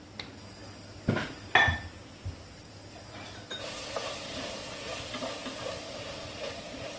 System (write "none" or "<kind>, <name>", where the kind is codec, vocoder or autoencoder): none